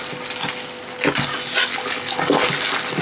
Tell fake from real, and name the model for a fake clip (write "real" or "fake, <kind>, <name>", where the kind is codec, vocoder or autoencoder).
real